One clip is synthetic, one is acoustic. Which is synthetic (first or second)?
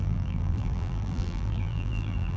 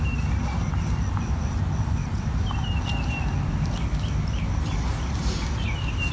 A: first